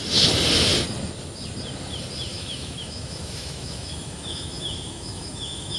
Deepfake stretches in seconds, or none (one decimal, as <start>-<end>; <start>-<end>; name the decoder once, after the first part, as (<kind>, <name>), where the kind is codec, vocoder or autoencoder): 2.3-5.8 (autoencoder, DAC-VAE)